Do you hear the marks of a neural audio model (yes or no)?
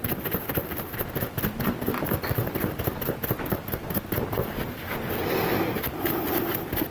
no